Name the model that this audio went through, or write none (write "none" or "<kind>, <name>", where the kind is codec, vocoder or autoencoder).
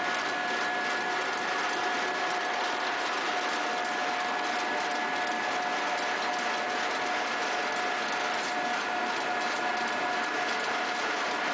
none